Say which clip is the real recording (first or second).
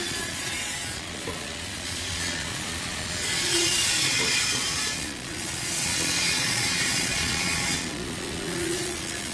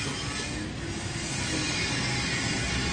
second